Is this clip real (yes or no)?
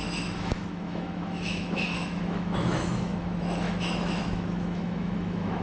no